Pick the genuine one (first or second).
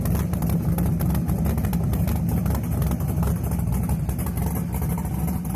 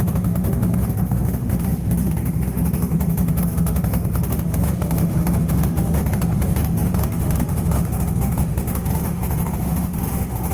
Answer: first